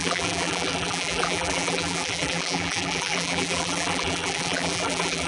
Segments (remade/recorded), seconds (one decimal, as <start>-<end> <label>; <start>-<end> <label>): 0.0-5.3 remade